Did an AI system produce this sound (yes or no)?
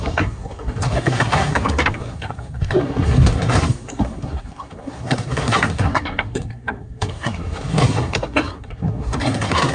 yes